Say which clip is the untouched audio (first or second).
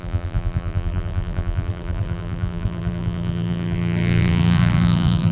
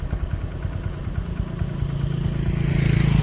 second